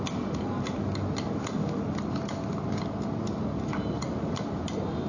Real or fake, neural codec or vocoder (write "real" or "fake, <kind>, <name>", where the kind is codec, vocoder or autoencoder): real